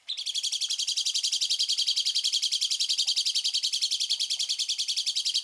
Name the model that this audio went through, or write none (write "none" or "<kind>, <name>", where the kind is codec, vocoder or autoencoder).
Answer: none